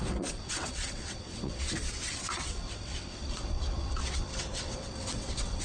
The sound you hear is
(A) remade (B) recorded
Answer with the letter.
A